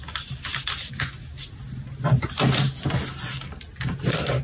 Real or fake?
real